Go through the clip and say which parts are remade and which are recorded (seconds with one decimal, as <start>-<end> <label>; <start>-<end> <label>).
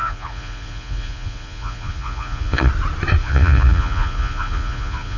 0.0-2.7 remade; 2.7-3.2 recorded; 3.2-5.2 remade